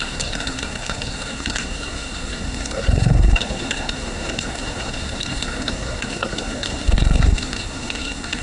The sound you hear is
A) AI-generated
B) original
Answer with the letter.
A